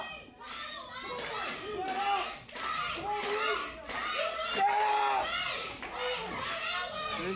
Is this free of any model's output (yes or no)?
yes